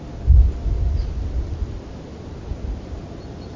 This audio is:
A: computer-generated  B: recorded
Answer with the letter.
B